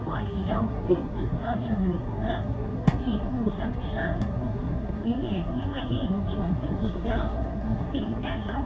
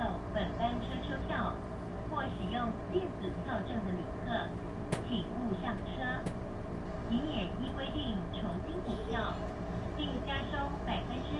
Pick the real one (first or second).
second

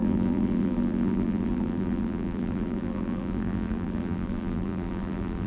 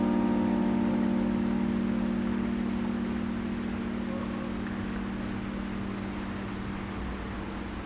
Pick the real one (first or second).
second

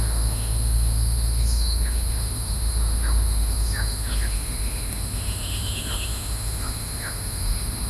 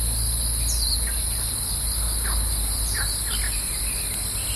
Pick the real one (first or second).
second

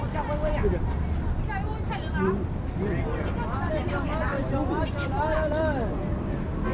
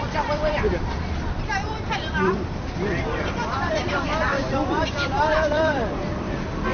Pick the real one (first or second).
first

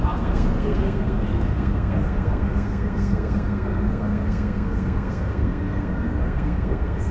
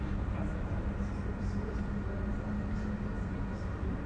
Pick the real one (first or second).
second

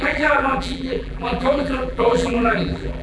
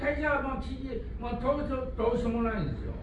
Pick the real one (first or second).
second